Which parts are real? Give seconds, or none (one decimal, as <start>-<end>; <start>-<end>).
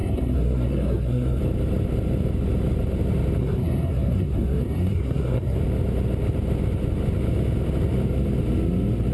1.4-3.4; 5.6-9.1